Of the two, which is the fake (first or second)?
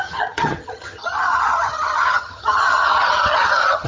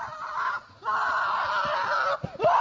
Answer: first